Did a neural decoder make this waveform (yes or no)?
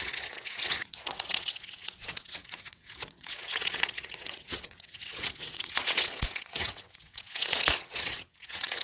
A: yes